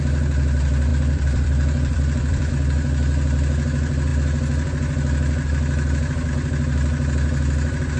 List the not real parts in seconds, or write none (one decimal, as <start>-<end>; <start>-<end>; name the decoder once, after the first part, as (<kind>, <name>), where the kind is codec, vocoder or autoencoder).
0.9-2.5 (vocoder, BigVGAN v2)